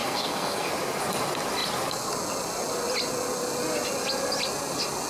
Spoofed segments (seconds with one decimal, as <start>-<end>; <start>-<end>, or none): 0.0-0.7